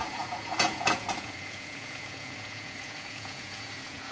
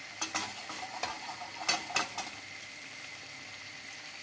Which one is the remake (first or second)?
first